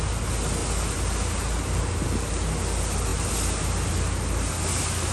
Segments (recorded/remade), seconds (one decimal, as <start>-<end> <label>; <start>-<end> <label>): 0.0-5.1 recorded